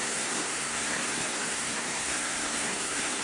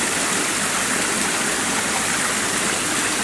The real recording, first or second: second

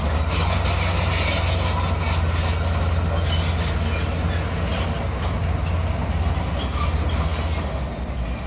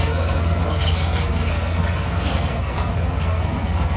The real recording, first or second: first